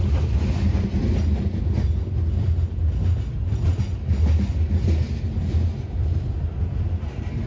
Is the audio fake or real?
real